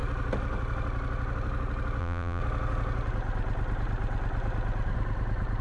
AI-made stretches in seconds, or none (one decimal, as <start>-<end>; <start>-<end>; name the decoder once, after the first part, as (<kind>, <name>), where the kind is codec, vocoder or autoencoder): 2.0-2.4 (vocoder, BigVGAN v2)